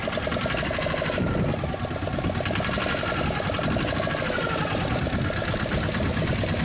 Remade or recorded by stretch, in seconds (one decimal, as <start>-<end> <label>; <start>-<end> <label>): 0.0-6.6 recorded